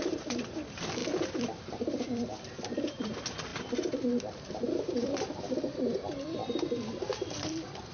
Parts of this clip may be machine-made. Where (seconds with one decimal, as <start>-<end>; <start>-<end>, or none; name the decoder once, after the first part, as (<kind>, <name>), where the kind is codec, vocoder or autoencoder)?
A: 0.0-6.4 (vocoder, BigVGAN v2); 7.2-7.9